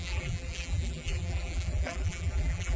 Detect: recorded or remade remade